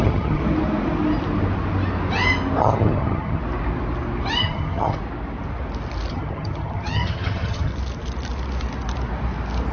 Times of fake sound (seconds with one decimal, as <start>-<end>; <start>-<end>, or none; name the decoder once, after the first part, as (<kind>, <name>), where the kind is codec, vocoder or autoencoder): 0.0-0.4 (vocoder, HiFi-GAN); 2.6-3.4; 4.4-5.0; 6.1-7.7